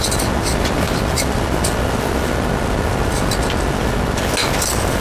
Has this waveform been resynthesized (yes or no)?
no